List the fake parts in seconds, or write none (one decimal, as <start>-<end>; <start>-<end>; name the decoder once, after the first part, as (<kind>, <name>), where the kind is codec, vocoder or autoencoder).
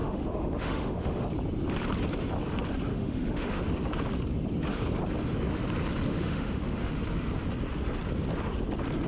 0.0-1.3 (autoencoder, DAC-VAE); 2.9-3.6; 6.1-6.9